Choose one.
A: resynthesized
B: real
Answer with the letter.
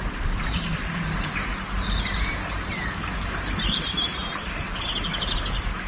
B